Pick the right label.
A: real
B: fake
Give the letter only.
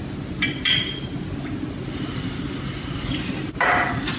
A